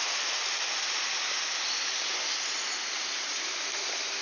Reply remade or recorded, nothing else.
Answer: recorded